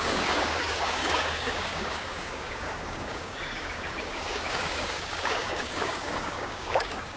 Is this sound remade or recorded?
remade